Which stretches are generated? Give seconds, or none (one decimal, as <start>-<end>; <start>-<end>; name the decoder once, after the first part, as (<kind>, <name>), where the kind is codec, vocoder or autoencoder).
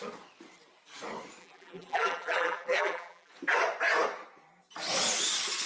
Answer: 1.4-3.3 (vocoder, BigVGAN v2)